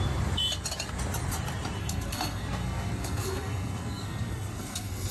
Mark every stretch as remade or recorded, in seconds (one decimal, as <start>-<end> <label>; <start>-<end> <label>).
0.0-1.8 recorded; 1.8-5.1 remade